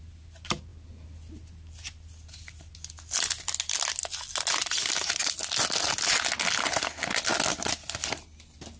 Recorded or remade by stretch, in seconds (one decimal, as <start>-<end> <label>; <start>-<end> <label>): 0.0-8.8 recorded